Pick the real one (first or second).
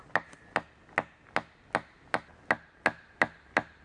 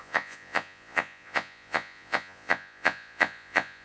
first